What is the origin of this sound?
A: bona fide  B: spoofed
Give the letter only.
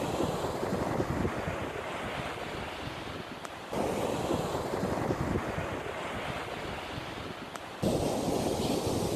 A